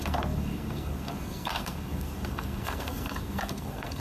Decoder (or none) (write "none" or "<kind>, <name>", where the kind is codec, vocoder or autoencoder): codec, SNAC